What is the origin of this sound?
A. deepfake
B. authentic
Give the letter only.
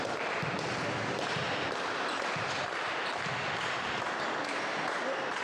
A